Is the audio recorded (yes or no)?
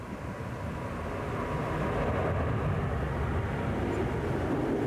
yes